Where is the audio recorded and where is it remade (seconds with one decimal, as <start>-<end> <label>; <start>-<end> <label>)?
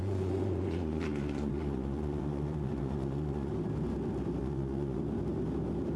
0.0-3.5 remade; 3.5-4.4 recorded; 4.4-5.0 remade; 5.0-6.0 recorded